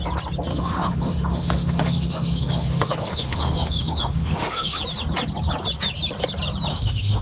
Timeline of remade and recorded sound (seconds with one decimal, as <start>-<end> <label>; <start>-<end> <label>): 0.0-0.5 recorded; 0.5-4.8 remade; 4.8-6.7 recorded; 6.7-7.2 remade

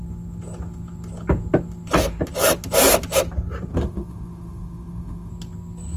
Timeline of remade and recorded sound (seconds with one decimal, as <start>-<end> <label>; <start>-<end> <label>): 0.0-3.7 recorded; 3.7-5.3 remade; 5.3-6.0 recorded

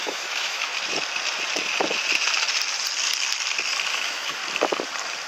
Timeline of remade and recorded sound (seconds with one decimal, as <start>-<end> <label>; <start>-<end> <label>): 0.0-0.7 remade; 0.7-3.9 recorded; 3.9-4.4 remade; 4.4-5.3 recorded

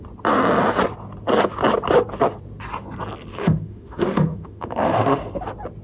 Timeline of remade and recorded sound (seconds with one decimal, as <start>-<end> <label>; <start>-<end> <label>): 0.0-3.3 recorded; 3.3-5.2 remade; 5.2-5.8 recorded

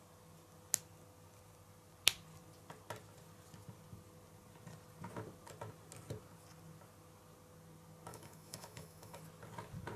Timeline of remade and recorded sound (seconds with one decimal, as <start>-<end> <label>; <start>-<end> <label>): 0.0-8.1 recorded; 8.1-9.2 remade; 9.2-10.0 recorded

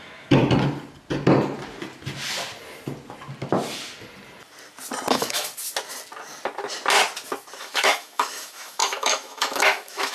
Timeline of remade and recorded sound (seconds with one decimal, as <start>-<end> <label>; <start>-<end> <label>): 0.0-0.4 remade; 0.4-5.1 recorded; 5.1-5.5 remade; 5.5-7.6 recorded; 7.6-10.1 remade

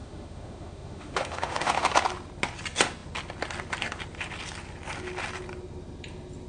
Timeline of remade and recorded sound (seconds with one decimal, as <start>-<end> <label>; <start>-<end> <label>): 0.0-1.9 remade; 1.9-6.5 recorded